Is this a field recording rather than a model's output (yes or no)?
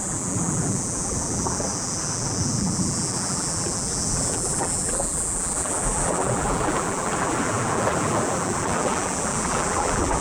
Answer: no